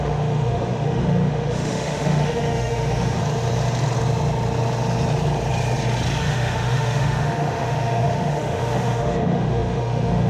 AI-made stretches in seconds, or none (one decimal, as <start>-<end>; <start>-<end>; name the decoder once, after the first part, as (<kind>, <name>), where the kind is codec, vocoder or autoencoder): 0.0-3.2 (autoencoder, DAC-VAE); 6.2-10.3